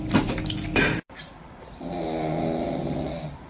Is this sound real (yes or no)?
yes